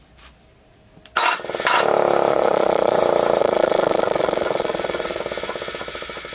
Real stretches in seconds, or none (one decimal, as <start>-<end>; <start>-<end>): 0.0-2.3; 3.0-3.4; 5.2-6.3